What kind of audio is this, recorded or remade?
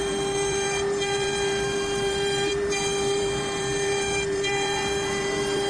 remade